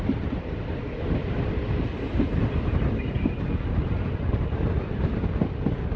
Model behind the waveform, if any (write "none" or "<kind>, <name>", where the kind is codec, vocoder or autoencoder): none